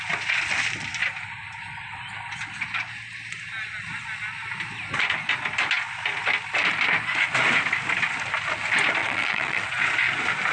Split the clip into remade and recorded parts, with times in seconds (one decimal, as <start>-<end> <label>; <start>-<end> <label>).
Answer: 0.0-9.0 recorded; 9.0-9.8 remade; 9.8-10.5 recorded